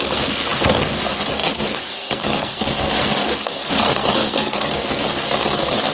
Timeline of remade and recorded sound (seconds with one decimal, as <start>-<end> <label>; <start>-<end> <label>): 0.0-5.9 remade

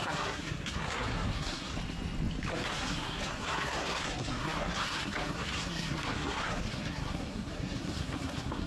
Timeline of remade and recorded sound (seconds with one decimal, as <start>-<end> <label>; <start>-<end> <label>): 0.0-1.7 remade; 1.7-2.5 recorded; 2.5-8.7 remade

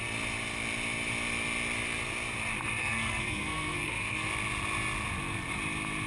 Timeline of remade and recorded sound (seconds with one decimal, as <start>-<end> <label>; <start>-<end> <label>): 0.0-2.8 recorded; 2.8-4.3 remade; 4.3-6.1 recorded